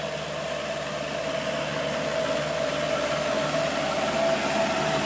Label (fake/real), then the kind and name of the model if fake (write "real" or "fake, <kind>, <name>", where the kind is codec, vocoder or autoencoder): real